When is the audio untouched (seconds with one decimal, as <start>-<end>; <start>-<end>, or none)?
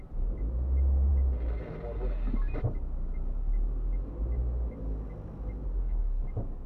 0.0-5.7; 6.2-6.7